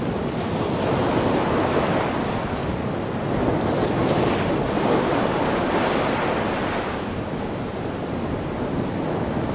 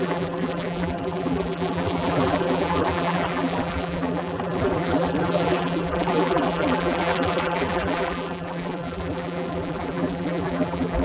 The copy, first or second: second